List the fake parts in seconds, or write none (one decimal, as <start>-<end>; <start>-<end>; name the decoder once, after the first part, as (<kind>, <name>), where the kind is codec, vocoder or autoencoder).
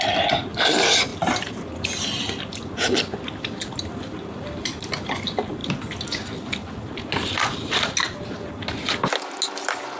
none